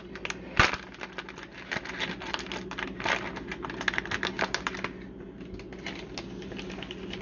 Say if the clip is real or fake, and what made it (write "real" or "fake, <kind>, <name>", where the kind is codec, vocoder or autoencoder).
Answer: real